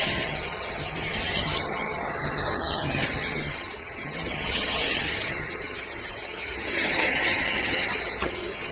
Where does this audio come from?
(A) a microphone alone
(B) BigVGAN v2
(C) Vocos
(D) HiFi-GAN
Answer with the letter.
D